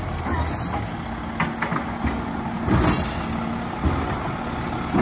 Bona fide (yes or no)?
yes